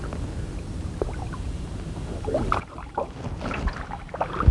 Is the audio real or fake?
real